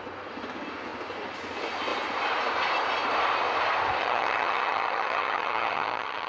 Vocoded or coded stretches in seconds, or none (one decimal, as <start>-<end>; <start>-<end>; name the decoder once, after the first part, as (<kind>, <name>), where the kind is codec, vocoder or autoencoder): 4.0-6.3 (vocoder, HiFi-GAN)